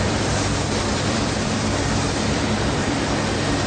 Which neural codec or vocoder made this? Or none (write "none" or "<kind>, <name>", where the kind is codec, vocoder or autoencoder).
vocoder, BigVGAN v2